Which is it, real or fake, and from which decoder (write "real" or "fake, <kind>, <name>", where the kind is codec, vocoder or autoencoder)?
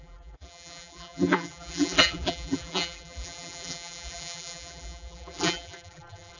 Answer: fake, vocoder, BigVGAN v2